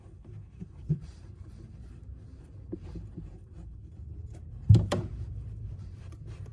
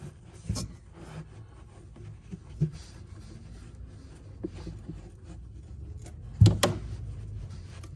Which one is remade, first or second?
first